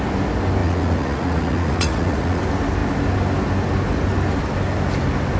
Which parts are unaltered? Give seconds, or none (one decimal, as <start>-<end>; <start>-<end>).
0.0-0.6; 2.4-5.4